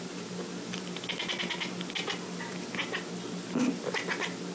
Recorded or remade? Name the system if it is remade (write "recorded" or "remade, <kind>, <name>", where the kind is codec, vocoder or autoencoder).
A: recorded